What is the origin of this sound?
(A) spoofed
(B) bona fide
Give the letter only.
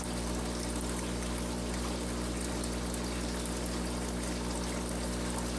B